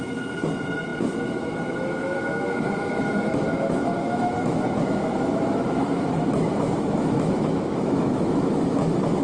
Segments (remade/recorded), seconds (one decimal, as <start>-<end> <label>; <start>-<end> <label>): 0.0-9.2 remade